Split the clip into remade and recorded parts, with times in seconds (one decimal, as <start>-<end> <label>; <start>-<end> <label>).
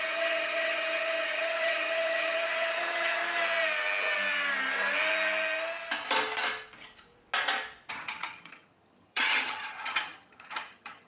0.0-3.2 remade; 3.2-7.9 recorded; 7.9-11.1 remade